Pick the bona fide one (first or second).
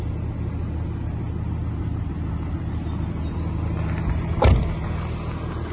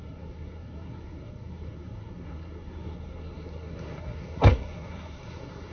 first